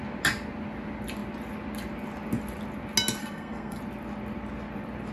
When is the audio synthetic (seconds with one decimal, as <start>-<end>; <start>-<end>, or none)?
3.2-3.8